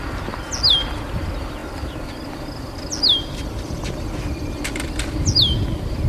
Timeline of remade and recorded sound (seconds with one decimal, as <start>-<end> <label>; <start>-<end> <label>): 0.0-6.1 recorded

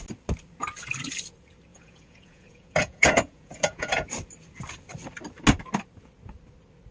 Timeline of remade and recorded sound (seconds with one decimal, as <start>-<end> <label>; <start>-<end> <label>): 0.0-1.7 recorded; 1.7-4.1 remade; 4.1-6.9 recorded

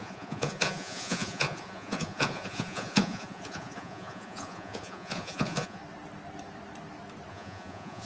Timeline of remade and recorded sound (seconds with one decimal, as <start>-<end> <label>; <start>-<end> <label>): 0.0-5.8 remade; 5.8-7.3 recorded; 7.3-8.1 remade

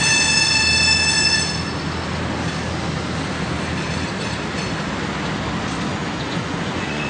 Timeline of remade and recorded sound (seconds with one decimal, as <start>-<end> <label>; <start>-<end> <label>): 0.0-5.9 recorded; 5.9-7.1 remade

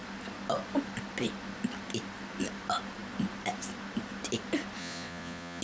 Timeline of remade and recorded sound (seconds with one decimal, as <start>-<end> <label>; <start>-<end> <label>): 0.0-4.8 recorded; 4.8-5.6 remade

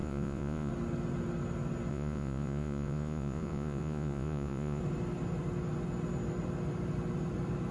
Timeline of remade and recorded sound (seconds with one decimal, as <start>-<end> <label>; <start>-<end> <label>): 0.0-0.7 remade; 0.7-1.9 recorded; 1.9-4.8 remade; 4.8-7.7 recorded

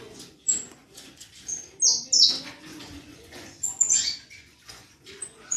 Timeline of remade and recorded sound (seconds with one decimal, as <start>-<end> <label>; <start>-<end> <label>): 0.0-1.5 remade; 1.5-2.4 recorded; 2.4-5.6 remade

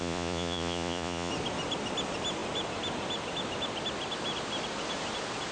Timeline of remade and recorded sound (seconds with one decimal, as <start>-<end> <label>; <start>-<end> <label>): 0.0-1.3 remade; 1.3-5.5 recorded